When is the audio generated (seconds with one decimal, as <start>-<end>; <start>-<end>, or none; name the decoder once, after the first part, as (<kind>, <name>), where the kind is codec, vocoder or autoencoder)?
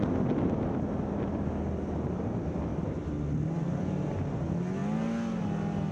2.7-4.1 (vocoder, BigVGAN v2)